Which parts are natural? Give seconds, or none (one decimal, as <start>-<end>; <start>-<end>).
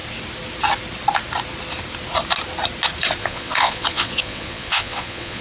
0.0-3.2